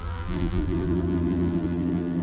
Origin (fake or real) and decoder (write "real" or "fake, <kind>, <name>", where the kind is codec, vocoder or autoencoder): fake, vocoder, BigVGAN v2